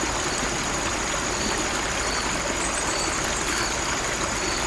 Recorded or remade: recorded